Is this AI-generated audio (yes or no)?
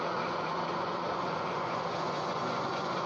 yes